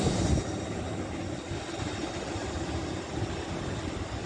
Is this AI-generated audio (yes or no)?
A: no